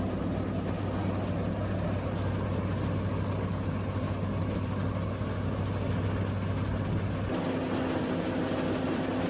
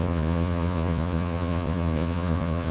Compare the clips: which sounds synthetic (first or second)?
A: second